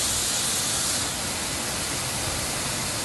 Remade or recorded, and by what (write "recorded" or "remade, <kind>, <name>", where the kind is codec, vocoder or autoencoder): recorded